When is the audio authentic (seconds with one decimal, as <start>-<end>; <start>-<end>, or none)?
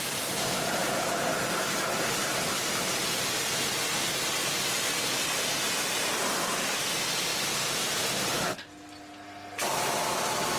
0.0-10.6